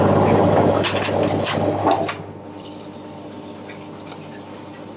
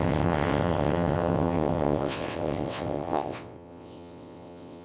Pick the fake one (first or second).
second